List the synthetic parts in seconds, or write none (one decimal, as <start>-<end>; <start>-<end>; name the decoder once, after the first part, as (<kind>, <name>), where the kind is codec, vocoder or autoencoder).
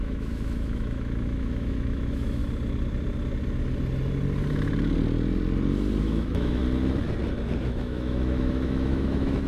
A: 0.0-2.4 (autoencoder, DAC-VAE); 6.0-6.6; 7.6-9.5